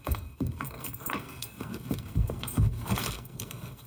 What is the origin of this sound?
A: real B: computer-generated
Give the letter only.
B